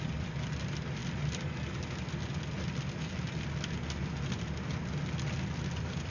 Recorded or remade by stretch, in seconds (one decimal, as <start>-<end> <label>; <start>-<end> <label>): 0.0-6.1 recorded